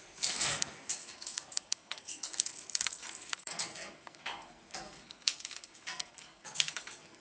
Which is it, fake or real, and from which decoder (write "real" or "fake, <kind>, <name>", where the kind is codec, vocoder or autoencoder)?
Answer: fake, codec, SNAC